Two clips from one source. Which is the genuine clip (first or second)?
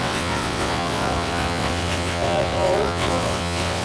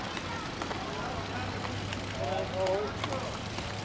second